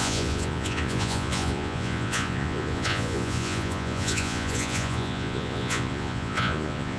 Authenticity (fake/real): fake